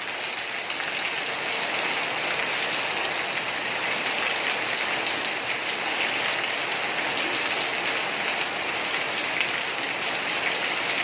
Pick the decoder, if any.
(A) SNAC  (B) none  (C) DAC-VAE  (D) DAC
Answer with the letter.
B